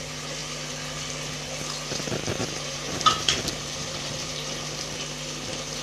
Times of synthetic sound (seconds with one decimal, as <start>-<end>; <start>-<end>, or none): 2.4-4.6